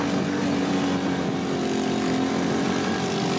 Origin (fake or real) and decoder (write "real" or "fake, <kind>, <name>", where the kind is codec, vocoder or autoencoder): real